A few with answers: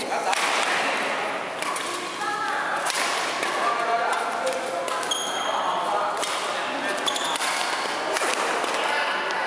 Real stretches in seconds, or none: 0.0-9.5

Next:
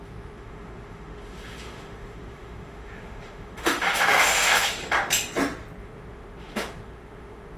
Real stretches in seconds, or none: 4.8-5.8

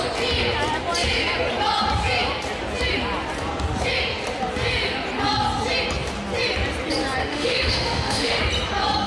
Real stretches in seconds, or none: 0.0-7.2; 8.4-9.1

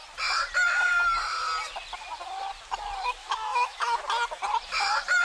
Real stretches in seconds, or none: 0.0-3.2; 4.0-5.2

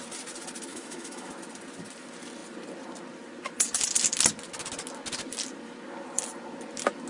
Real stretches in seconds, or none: 0.0-0.7; 1.3-7.1